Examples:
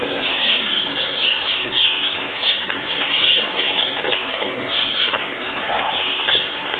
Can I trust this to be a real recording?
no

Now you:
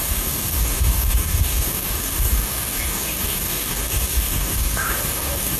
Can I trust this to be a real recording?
no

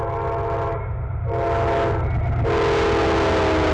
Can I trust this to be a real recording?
yes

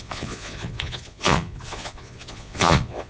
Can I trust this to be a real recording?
no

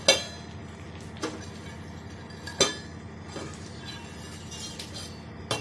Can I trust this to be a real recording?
yes